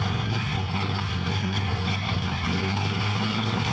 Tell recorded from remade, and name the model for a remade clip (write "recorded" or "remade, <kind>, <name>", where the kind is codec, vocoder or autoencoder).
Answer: remade, codec, SNAC